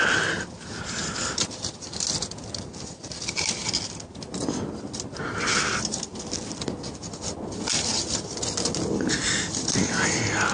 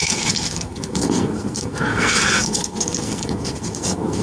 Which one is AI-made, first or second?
second